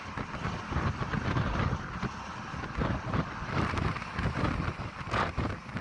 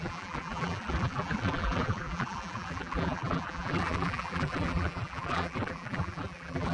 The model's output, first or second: second